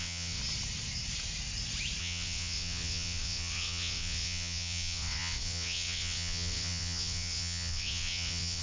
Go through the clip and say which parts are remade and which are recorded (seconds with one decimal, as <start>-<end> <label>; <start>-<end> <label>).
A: 0.0-0.4 remade; 0.4-2.0 recorded; 2.0-8.6 remade